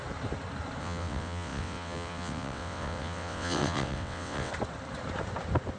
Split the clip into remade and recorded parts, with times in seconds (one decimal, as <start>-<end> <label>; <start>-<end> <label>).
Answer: 0.0-0.8 recorded; 0.8-4.5 remade; 4.5-5.8 recorded